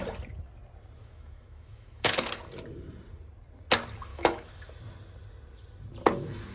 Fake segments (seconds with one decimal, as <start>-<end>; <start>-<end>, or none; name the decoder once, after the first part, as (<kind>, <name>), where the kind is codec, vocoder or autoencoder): 1.0-2.3 (autoencoder, DAC-VAE); 4.1-4.7